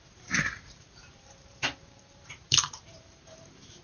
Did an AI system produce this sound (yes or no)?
yes